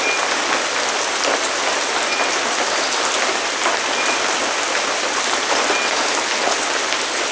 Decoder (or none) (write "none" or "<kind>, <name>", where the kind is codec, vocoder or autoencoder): none